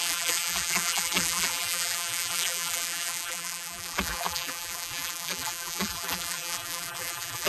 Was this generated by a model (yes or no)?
yes